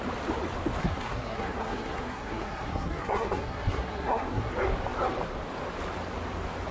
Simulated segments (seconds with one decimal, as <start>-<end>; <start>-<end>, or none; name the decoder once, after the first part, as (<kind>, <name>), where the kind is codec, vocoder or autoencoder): 0.8-4.5 (codec, SNAC)